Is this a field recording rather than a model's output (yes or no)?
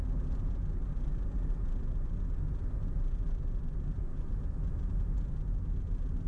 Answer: yes